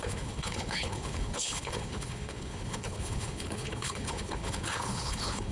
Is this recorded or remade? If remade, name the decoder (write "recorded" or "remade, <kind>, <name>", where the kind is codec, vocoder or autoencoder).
remade, codec, HILCodec